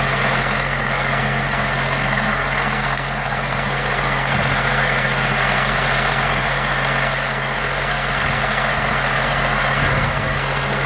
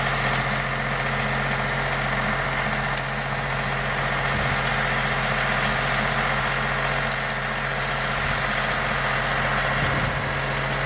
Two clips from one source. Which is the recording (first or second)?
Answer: second